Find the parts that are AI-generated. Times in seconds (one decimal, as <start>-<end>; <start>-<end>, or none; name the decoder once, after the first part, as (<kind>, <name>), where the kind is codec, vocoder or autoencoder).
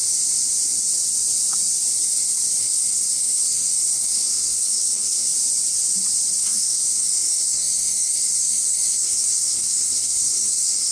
2.6-5.3 (codec, SNAC); 6.4-10.9